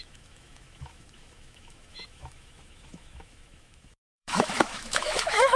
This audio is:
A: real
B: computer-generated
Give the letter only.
B